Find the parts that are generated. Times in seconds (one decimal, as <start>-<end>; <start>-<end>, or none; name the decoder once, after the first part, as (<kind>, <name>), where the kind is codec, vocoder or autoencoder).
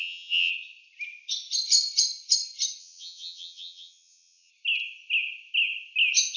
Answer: 0.0-0.5 (vocoder, HiFi-GAN); 2.8-4.5